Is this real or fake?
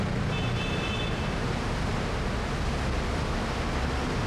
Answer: real